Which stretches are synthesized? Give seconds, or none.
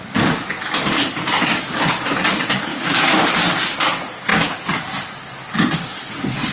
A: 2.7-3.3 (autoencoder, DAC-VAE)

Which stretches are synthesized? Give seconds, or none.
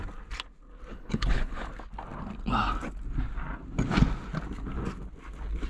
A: 0.9-1.7 (codec, HILCodec)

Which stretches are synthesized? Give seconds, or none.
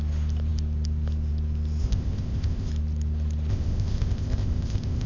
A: 1.8-2.7 (codec, ZipCodec); 3.5-5.1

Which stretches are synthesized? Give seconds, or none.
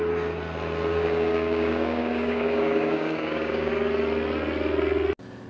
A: 0.9-3.7 (codec, DAC)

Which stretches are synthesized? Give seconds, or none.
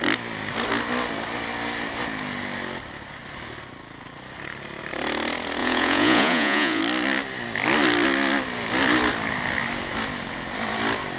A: 5.6-6.8 (vocoder, Vocos)